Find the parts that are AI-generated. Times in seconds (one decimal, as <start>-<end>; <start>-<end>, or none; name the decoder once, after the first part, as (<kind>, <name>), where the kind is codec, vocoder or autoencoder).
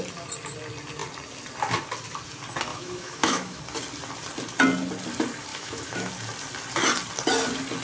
2.7-3.6 (autoencoder, DAC-VAE); 5.5-6.1